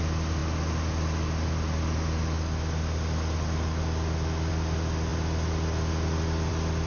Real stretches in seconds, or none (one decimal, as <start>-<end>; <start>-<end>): 0.0-6.9